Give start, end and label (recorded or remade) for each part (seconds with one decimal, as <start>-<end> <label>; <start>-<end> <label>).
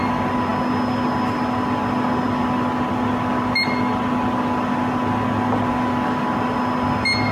0.0-7.3 recorded